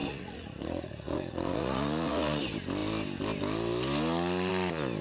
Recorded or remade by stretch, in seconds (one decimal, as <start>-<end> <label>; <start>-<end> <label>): 0.0-2.4 remade; 2.4-5.0 recorded